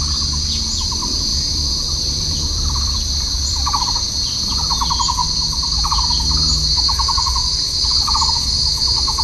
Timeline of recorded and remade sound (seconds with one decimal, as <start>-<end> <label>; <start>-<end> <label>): 0.0-1.3 recorded; 1.3-4.5 remade; 4.5-5.2 recorded; 5.2-6.0 remade; 6.0-7.4 recorded; 7.4-8.5 remade; 8.5-9.2 recorded